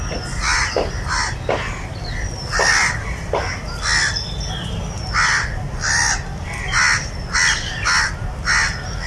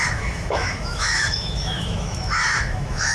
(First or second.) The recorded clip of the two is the first